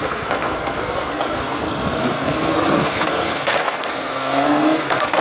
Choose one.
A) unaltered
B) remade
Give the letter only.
B